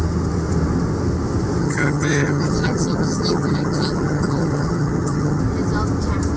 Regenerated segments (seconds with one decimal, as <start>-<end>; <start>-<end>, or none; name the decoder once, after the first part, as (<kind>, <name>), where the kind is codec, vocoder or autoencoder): 1.6-5.4 (vocoder, HiFi-GAN)